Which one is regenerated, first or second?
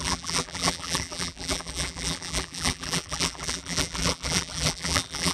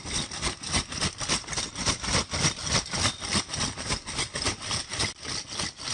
first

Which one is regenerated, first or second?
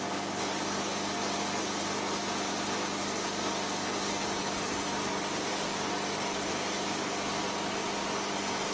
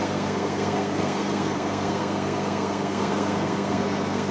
second